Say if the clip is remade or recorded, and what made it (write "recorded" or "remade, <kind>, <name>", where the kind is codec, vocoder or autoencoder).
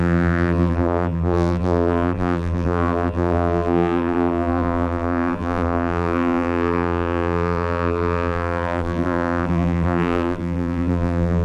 remade, vocoder, BigVGAN v2